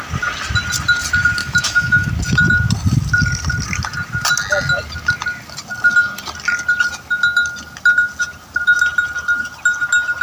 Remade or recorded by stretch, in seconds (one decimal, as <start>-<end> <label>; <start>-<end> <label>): 0.0-1.4 recorded; 1.4-2.1 remade; 2.1-10.2 recorded